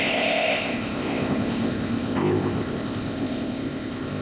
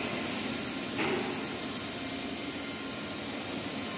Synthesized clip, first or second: first